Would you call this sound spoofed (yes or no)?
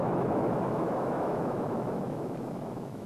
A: yes